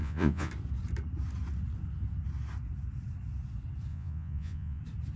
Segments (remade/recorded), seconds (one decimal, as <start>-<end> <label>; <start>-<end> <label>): 0.0-0.5 remade; 0.5-3.9 recorded; 3.9-4.8 remade; 4.8-5.2 recorded

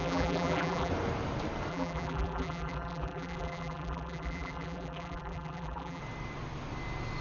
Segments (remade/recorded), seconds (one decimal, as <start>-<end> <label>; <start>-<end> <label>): 0.0-0.9 remade; 0.9-1.7 recorded; 1.7-6.0 remade; 6.0-7.2 recorded